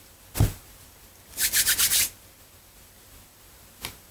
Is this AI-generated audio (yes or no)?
no